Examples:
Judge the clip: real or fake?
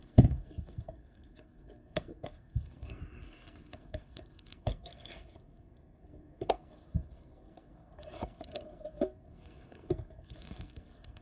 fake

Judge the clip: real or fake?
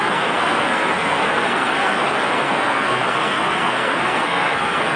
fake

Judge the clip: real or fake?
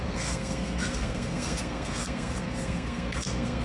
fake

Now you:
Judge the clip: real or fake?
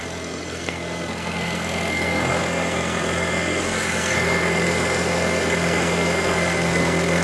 fake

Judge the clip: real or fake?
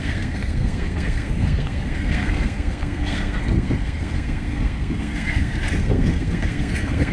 fake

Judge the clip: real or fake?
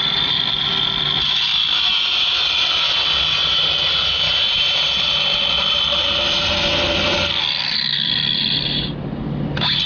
real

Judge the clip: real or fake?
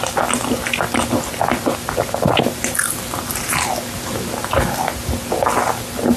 real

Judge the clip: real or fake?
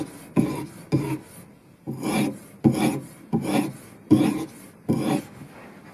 real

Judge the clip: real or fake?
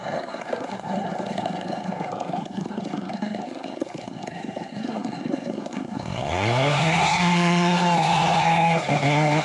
fake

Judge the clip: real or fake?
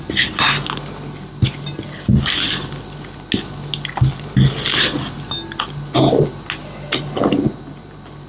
real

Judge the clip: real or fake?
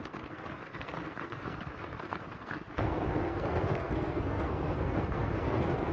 fake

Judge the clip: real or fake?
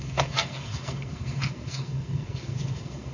fake